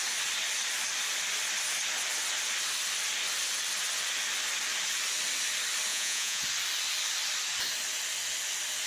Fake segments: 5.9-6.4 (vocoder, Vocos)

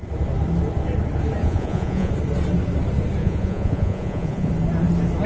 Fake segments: 1.4-2.1 (vocoder, Vocos); 3.2-4.5

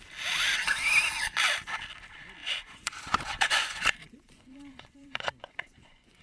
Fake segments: 2.4-6.2 (vocoder, Vocos)

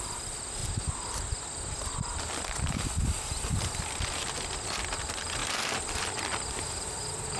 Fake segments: none